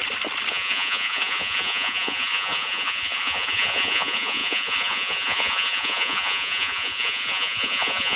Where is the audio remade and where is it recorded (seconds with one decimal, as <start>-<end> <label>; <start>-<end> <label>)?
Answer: 0.0-0.5 recorded; 0.5-8.2 remade